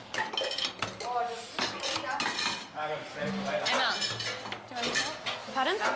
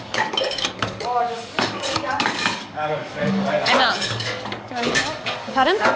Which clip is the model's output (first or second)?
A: second